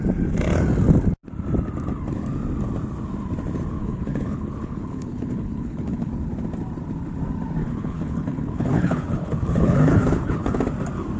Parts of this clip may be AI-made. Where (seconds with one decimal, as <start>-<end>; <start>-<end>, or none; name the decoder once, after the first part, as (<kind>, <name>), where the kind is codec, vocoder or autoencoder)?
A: 3.8-6.1 (codec, HILCodec); 7.6-10.6